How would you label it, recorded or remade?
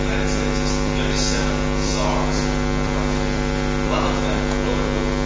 recorded